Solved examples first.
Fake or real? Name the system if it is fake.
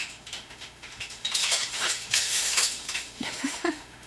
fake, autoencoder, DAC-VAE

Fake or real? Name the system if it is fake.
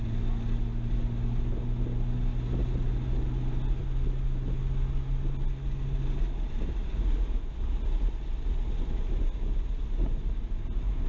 real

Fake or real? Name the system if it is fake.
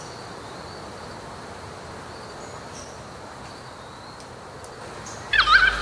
real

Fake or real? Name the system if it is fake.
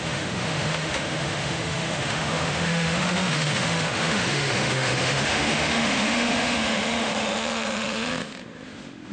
fake, autoencoder, DAC-VAE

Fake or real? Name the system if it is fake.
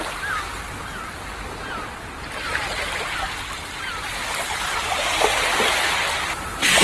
real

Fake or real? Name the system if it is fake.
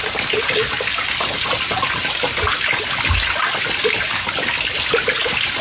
real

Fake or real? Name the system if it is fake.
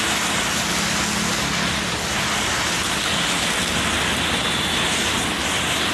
real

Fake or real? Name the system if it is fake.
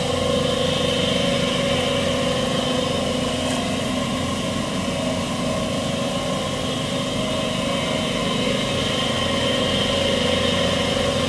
real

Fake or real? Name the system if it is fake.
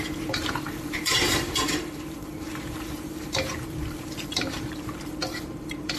fake, vocoder, BigVGAN v2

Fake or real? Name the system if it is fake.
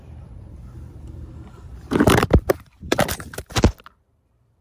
fake, vocoder, BigVGAN v2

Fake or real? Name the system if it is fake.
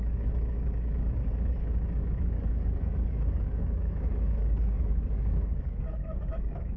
fake, codec, DAC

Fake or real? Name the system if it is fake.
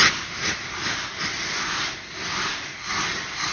real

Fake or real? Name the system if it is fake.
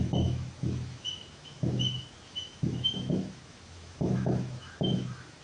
fake, autoencoder, DAC-VAE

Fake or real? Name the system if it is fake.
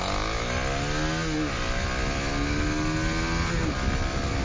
real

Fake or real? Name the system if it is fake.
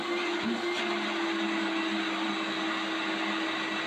real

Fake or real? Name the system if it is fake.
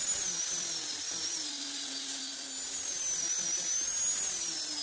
real